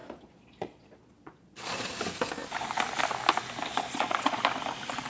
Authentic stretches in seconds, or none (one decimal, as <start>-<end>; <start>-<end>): 1.9-3.7; 4.4-5.1